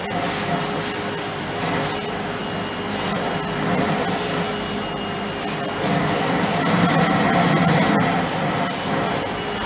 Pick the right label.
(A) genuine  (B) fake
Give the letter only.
A